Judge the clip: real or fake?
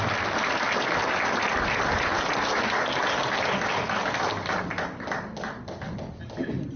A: real